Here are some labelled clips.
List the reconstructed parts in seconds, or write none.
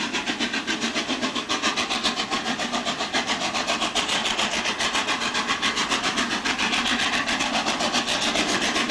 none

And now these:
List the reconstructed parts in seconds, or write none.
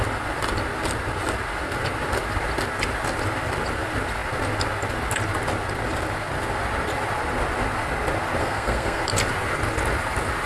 8.4-9.0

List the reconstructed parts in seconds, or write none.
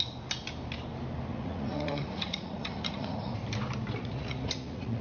1.3-3.3; 4.0-5.0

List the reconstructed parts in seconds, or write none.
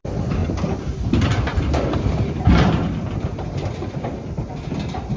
1.5-3.6